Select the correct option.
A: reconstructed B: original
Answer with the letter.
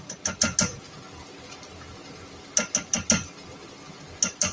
B